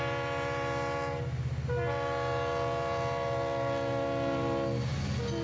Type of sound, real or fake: real